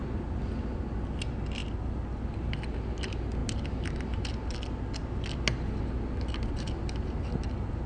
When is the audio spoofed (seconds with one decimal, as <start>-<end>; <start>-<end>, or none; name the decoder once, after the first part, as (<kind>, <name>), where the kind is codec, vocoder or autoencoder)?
none